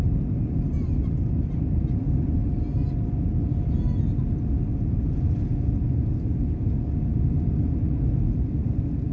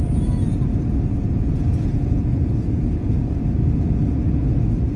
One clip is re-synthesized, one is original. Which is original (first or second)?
first